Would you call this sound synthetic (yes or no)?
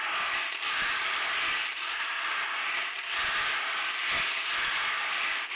yes